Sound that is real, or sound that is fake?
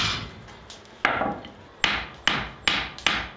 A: real